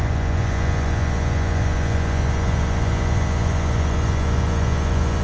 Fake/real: fake